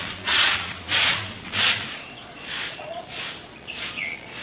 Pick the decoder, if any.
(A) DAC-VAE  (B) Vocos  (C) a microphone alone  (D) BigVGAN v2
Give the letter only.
B